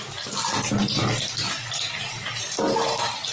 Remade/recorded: recorded